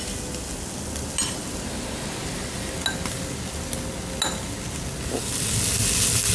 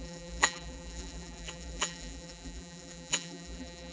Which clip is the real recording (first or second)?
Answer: first